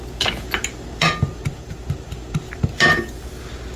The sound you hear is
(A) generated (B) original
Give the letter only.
B